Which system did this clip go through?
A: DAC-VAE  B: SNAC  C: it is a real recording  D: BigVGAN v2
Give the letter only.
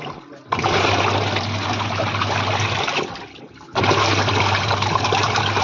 C